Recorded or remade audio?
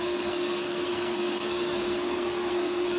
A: remade